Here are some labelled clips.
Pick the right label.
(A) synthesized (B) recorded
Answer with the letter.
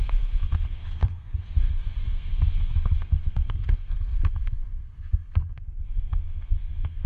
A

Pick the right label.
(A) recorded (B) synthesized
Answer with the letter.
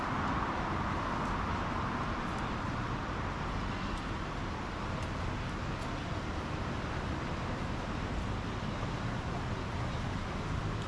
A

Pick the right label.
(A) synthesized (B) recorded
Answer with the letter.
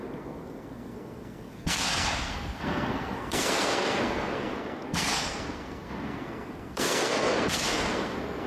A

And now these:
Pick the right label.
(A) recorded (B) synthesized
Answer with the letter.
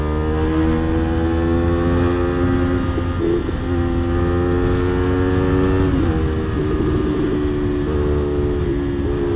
A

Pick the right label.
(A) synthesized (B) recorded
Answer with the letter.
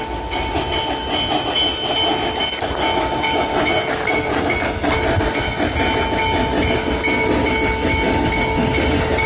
B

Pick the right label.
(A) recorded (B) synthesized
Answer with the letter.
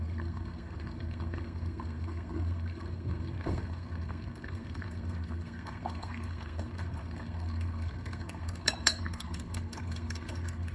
B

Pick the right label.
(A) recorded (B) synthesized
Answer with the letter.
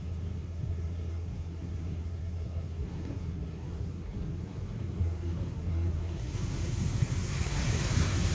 B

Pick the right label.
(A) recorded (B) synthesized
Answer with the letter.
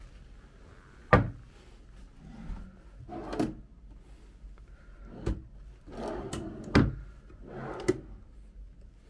A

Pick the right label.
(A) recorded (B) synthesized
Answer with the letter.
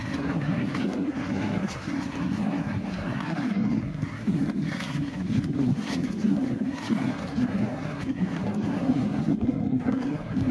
B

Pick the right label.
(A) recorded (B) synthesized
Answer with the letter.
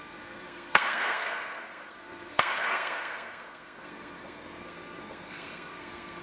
B